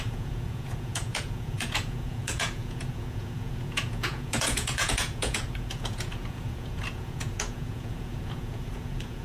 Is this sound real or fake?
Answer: fake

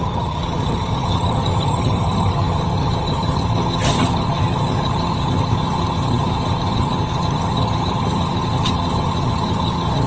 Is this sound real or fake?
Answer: fake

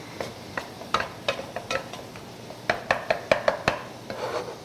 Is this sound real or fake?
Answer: real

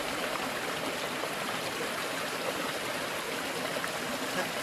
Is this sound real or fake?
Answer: real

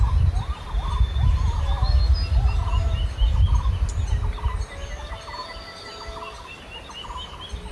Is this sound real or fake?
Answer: real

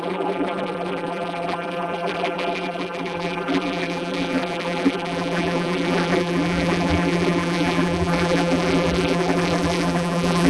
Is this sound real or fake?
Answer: fake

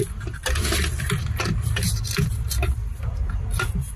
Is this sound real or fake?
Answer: real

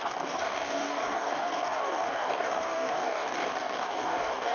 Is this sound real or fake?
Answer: fake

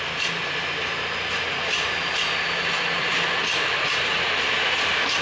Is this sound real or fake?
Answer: real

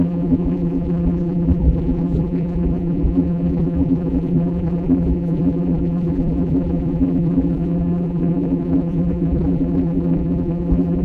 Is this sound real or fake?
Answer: fake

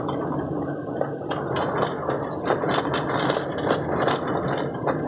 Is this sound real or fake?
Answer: real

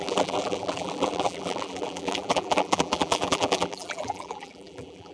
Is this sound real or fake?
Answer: fake